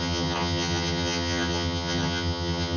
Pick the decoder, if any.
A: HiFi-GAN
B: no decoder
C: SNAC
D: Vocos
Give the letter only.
A